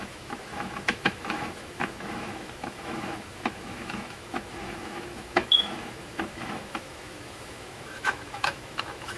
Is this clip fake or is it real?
fake